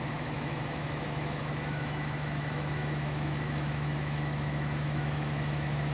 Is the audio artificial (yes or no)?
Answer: yes